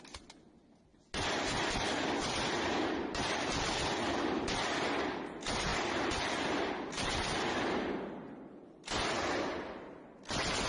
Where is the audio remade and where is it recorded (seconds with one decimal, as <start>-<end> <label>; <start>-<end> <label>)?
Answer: 0.0-10.7 recorded